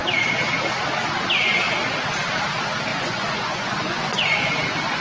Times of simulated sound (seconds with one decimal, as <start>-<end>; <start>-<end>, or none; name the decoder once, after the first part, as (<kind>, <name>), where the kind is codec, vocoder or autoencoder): 2.9-4.5 (vocoder, Vocos)